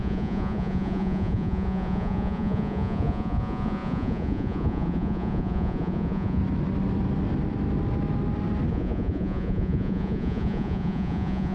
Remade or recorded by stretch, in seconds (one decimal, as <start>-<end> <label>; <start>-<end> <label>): 0.0-6.4 remade; 6.4-8.7 recorded; 8.7-11.5 remade